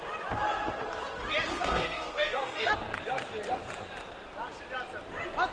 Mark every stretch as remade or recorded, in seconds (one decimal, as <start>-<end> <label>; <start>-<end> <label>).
0.0-1.5 recorded; 1.5-2.7 remade; 2.7-5.5 recorded